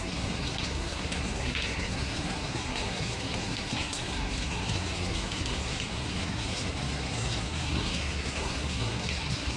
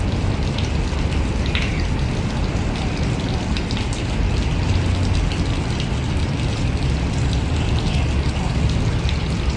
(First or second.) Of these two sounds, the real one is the second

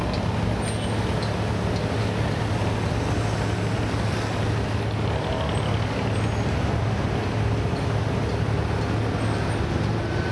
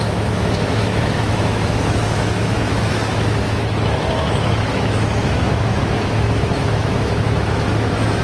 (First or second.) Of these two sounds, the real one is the first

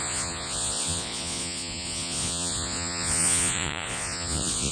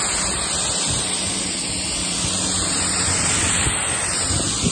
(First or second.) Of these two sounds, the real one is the second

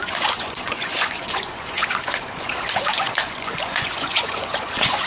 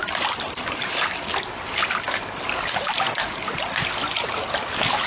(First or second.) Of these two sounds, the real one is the second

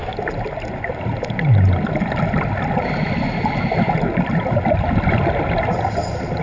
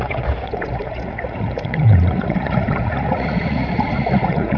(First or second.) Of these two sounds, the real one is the first